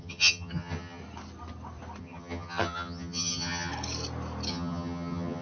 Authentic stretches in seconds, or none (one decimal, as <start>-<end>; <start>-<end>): 1.0-2.0; 3.7-4.5